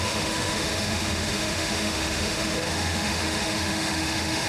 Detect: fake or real fake